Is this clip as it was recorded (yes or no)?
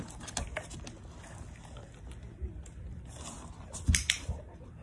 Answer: yes